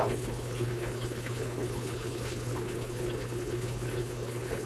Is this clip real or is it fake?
fake